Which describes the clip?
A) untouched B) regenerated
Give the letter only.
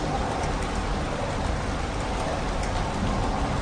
A